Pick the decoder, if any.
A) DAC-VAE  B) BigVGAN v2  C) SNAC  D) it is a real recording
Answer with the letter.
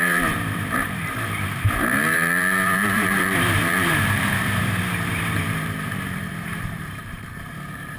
B